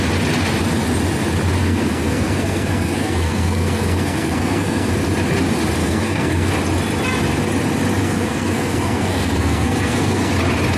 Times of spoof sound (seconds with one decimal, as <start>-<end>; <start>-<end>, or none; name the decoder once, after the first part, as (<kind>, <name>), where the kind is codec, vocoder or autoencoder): 1.6-4.9 (codec, SNAC); 5.8-6.5; 8.0-10.3